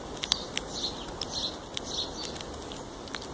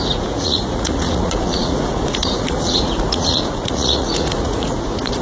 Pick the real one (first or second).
first